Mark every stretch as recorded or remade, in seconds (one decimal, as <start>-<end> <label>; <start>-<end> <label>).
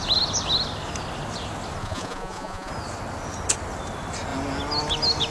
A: 0.0-1.8 recorded; 1.8-2.7 remade; 2.7-5.3 recorded